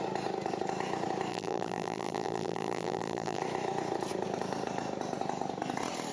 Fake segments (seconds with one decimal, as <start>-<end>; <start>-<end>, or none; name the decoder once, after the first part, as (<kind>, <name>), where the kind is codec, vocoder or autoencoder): 1.3-3.4 (vocoder, BigVGAN v2)